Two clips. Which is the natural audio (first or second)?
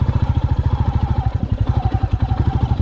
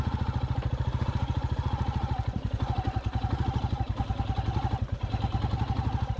second